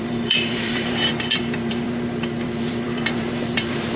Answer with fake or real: fake